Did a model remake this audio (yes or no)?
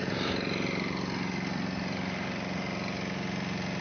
no